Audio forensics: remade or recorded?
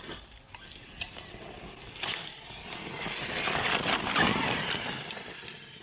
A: recorded